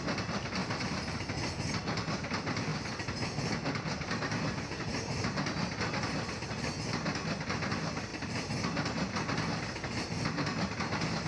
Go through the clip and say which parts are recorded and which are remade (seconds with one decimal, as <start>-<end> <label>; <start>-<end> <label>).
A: 0.0-0.6 recorded; 0.6-1.2 remade; 1.2-4.9 recorded; 4.9-5.7 remade; 5.7-8.1 recorded; 8.1-9.1 remade; 9.1-11.3 recorded

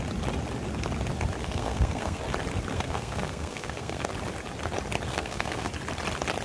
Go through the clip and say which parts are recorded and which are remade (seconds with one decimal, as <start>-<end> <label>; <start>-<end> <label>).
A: 0.0-1.4 recorded; 1.4-2.2 remade; 2.2-2.7 recorded; 2.7-4.1 remade; 4.1-5.1 recorded; 5.1-5.7 remade; 5.7-6.4 recorded

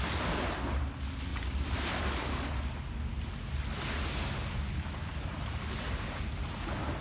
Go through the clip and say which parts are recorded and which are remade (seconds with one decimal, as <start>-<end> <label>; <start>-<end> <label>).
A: 0.0-7.0 recorded

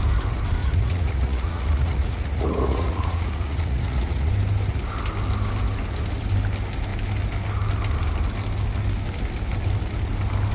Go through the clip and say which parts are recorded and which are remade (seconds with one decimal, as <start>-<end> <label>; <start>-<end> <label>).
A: 0.0-0.6 recorded; 0.6-4.3 remade; 4.3-10.5 recorded